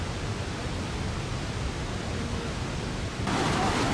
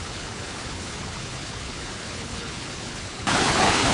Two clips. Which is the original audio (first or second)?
first